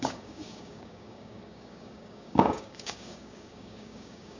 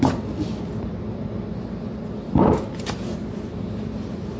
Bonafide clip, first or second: second